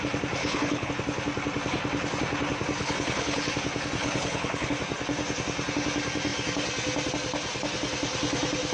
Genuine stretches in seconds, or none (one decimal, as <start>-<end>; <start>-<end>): 0.0-0.4; 0.9-2.8; 3.5-4.0; 4.7-8.7